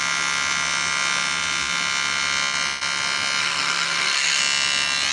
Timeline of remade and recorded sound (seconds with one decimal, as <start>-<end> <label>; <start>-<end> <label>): 0.0-3.4 recorded; 3.4-4.4 remade; 4.4-5.1 recorded